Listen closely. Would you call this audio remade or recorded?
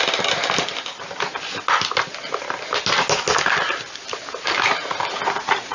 recorded